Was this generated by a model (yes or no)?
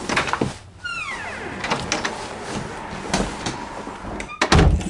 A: no